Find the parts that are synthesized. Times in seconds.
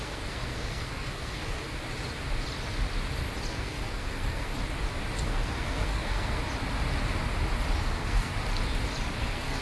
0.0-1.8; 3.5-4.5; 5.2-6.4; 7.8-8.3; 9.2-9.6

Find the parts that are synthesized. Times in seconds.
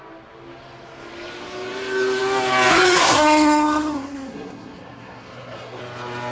2.7-5.8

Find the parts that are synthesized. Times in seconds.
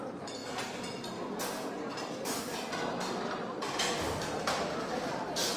none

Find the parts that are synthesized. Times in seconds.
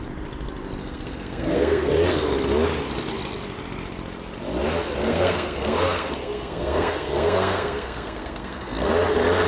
0.8-1.9; 5.0-8.9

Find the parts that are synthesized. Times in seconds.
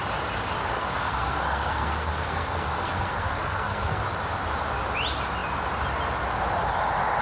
0.6-4.0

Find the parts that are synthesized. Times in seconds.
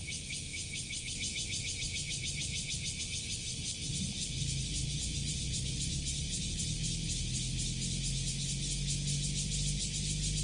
none